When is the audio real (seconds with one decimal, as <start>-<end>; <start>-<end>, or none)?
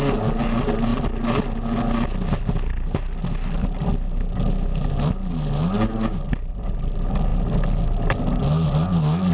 0.0-9.3